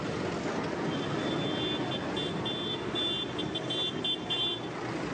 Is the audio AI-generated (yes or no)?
no